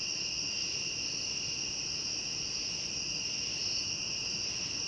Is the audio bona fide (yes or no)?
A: yes